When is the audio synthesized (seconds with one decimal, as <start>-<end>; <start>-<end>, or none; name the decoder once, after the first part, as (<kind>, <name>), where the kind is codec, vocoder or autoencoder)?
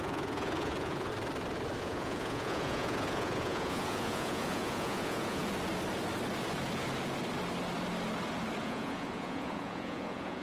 0.0-1.1 (vocoder, Vocos); 1.8-5.4; 8.6-10.4